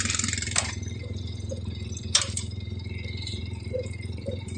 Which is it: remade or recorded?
remade